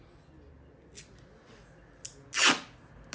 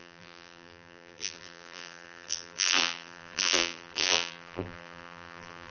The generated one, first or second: second